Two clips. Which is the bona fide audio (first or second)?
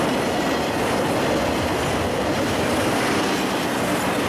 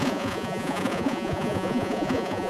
first